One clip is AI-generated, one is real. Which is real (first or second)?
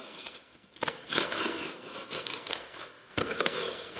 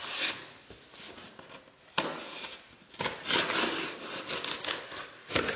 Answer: second